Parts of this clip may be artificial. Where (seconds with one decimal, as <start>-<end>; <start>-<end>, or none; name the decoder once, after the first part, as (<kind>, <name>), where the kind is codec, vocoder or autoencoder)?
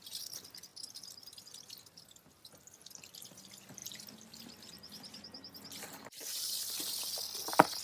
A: none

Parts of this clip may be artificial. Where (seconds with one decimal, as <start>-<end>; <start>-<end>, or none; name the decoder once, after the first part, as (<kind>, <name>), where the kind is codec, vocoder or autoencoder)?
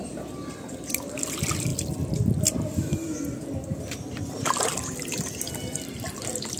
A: 0.0-1.7 (vocoder, BigVGAN v2); 2.4-6.6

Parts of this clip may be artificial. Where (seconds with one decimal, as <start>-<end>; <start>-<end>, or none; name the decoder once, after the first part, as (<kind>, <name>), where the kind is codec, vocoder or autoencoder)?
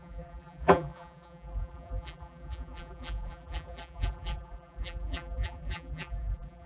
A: 0.0-6.7 (vocoder, BigVGAN v2)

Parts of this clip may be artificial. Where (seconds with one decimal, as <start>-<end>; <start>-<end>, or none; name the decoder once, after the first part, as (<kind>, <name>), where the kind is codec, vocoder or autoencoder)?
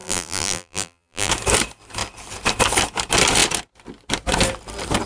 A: 0.0-1.3 (vocoder, BigVGAN v2)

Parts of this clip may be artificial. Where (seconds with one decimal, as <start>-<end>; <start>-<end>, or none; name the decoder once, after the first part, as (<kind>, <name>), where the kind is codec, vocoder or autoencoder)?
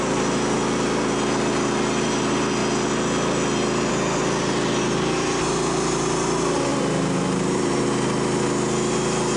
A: 6.7-7.8 (vocoder, BigVGAN v2)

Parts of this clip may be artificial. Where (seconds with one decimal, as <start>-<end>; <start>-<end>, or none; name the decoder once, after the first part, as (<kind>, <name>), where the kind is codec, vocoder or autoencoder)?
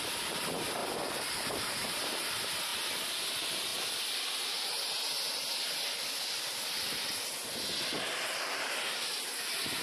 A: 0.8-1.9 (vocoder, BigVGAN v2)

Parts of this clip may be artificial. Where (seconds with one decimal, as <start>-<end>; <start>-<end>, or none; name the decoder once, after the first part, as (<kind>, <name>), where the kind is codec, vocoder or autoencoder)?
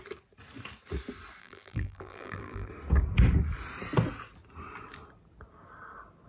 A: 1.4-2.7 (vocoder, BigVGAN v2)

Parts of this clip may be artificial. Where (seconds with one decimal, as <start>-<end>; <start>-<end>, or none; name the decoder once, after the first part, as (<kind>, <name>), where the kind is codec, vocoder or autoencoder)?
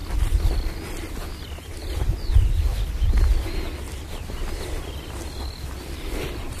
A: 2.3-2.7 (vocoder, BigVGAN v2); 6.0-6.6